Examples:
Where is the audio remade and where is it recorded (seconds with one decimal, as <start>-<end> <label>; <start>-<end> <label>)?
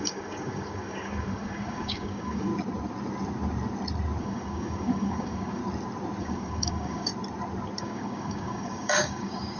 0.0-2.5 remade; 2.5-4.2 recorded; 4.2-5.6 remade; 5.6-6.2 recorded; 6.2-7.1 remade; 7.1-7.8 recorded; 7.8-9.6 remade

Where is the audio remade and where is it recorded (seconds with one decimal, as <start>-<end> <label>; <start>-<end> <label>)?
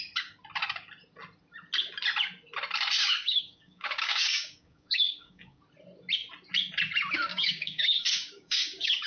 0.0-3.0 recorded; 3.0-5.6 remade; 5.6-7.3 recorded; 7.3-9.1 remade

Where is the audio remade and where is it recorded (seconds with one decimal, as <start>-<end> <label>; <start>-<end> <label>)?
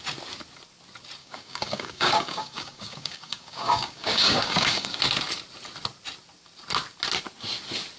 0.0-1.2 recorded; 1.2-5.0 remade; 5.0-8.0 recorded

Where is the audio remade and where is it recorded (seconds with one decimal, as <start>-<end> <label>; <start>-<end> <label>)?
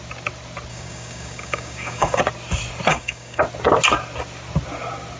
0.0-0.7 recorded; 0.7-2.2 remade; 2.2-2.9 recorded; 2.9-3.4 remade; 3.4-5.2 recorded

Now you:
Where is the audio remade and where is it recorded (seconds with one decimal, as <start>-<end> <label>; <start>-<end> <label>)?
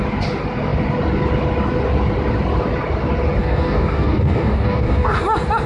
0.0-3.4 recorded; 3.4-5.2 remade; 5.2-5.7 recorded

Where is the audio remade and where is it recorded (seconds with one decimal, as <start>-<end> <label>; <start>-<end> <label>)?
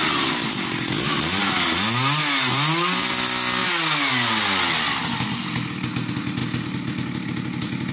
0.0-7.9 recorded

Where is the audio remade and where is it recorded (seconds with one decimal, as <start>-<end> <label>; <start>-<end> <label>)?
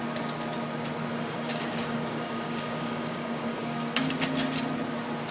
0.0-1.1 recorded; 1.1-4.1 remade; 4.1-5.3 recorded